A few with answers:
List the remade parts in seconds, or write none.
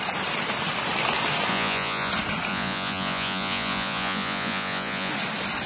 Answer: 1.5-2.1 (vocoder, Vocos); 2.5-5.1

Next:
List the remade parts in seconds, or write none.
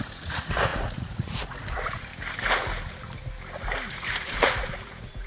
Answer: 0.0-2.1 (vocoder, Vocos); 3.9-5.3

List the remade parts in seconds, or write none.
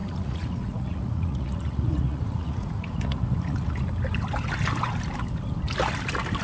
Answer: 0.0-3.8 (vocoder, Vocos)